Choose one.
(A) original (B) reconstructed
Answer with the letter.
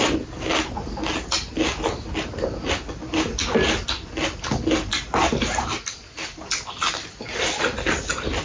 A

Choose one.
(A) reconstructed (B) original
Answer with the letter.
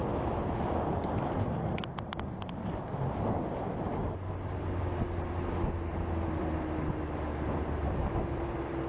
B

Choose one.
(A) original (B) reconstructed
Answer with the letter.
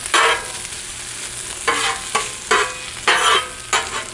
A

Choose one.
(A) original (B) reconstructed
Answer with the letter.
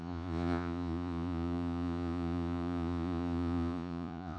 B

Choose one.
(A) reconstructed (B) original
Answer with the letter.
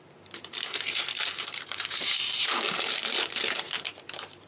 A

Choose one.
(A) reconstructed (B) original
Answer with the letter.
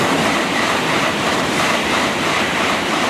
A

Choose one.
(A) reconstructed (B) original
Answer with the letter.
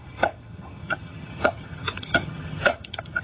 A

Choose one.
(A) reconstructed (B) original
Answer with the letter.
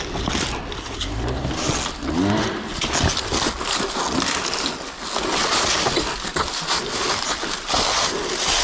B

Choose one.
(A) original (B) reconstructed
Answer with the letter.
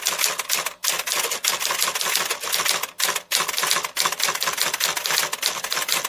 A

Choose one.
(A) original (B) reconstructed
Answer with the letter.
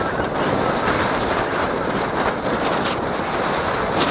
A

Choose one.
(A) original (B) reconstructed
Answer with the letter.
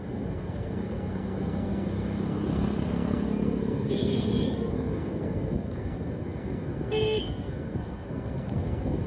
B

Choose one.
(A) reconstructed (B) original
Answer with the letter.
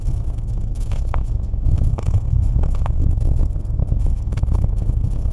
A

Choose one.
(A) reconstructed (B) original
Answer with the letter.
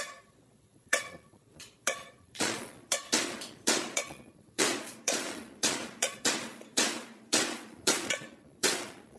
A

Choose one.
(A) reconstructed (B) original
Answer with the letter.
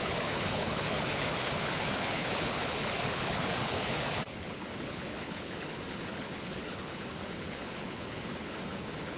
A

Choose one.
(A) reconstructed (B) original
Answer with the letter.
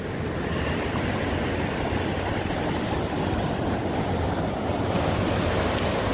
B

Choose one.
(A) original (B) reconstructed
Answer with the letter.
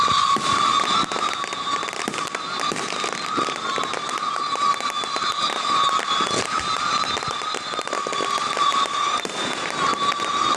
A